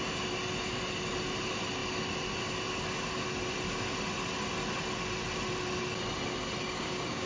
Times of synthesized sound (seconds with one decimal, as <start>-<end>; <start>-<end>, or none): 6.6-7.3